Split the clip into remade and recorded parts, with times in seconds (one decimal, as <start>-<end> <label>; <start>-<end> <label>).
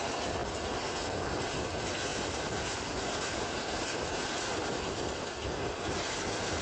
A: 0.0-6.6 recorded